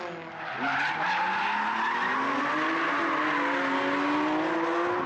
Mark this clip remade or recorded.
recorded